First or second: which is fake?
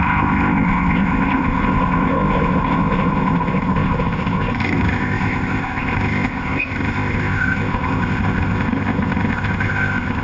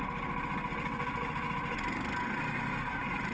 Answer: first